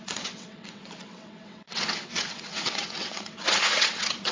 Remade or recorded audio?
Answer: remade